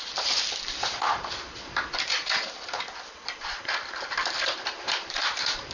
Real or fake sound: fake